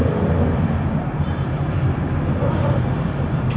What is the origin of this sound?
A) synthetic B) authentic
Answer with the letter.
A